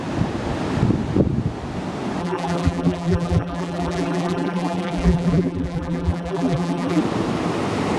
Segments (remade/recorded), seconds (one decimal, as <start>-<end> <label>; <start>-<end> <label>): 0.0-2.2 recorded; 2.2-7.0 remade; 7.0-8.0 recorded